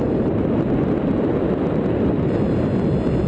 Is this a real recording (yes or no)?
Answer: yes